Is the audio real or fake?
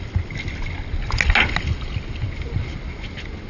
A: real